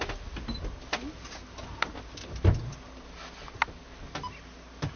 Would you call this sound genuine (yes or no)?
yes